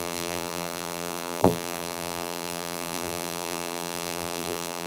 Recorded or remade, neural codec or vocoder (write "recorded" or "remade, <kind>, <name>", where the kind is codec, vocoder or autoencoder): remade, vocoder, BigVGAN v2